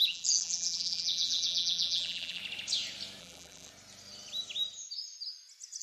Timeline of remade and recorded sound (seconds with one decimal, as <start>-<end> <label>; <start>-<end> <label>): 0.0-2.4 remade; 2.4-3.2 recorded; 3.2-3.7 remade; 3.7-5.8 recorded